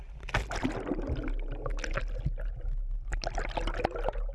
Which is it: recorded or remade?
recorded